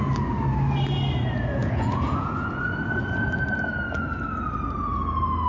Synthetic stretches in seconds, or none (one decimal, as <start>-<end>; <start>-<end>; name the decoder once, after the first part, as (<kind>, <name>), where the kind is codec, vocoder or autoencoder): 1.6-2.6 (vocoder, Vocos)